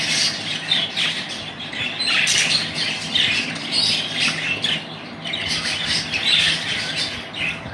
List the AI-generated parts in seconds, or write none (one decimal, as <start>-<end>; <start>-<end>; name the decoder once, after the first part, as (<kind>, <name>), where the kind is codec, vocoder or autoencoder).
none